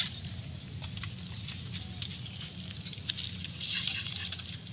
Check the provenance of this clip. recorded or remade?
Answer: recorded